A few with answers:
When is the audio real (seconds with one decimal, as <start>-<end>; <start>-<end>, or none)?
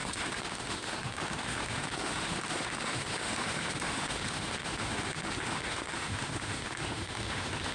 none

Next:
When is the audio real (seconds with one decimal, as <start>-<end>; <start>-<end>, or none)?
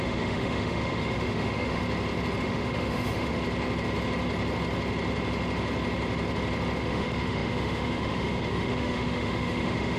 1.8-2.4; 3.3-6.8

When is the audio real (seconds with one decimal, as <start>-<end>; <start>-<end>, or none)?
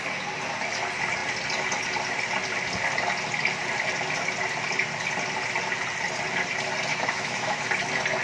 0.0-6.9; 7.6-8.2